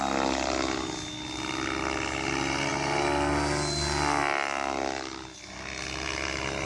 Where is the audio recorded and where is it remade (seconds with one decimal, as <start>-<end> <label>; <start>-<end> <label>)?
0.0-6.7 recorded